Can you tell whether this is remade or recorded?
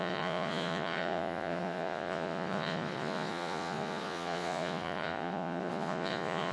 remade